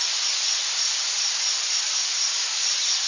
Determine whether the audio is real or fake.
real